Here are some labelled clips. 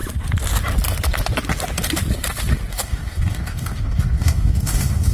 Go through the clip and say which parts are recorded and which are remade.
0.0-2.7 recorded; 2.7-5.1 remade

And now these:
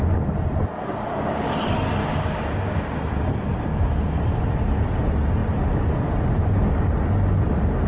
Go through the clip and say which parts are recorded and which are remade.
0.0-0.8 recorded; 0.8-1.5 remade; 1.5-2.0 recorded; 2.0-3.1 remade; 3.1-3.7 recorded; 3.7-4.2 remade; 4.2-7.9 recorded

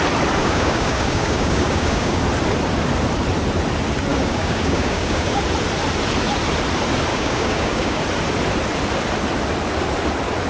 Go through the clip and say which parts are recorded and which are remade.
0.0-0.4 recorded; 0.4-2.2 remade; 2.2-4.1 recorded; 4.1-5.4 remade; 5.4-7.1 recorded; 7.1-8.0 remade; 8.0-10.5 recorded